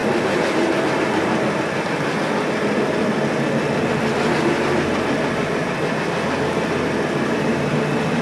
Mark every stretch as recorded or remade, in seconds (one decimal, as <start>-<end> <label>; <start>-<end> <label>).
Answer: 0.0-8.2 recorded